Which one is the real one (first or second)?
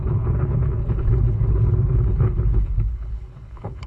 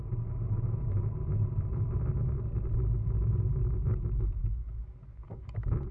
second